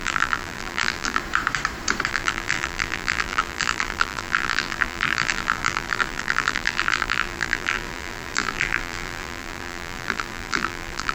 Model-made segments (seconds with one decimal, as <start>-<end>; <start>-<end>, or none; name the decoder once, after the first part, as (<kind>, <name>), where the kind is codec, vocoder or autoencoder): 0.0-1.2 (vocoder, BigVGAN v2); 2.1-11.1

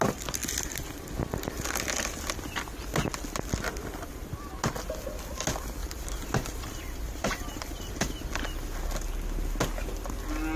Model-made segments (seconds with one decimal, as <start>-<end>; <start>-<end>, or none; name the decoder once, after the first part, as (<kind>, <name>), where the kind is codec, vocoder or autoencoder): 5.8-8.2 (vocoder, BigVGAN v2)

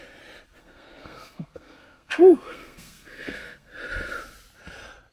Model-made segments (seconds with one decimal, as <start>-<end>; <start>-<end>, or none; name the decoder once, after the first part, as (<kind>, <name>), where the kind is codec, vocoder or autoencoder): 0.6-3.7 (codec, SNAC)